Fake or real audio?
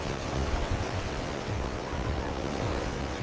fake